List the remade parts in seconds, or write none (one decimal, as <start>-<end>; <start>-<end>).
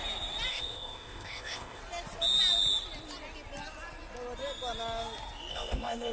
0.5-1.8; 5.5-6.1